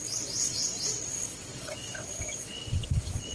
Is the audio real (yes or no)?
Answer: no